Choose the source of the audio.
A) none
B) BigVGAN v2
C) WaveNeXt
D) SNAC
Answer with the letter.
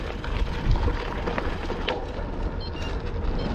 A